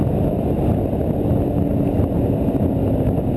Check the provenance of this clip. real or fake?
real